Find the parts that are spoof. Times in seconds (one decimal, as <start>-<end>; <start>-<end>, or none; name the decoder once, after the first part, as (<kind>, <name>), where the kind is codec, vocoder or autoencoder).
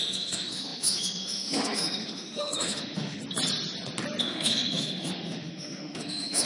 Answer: 0.0-3.2 (autoencoder, DAC-VAE); 4.2-6.5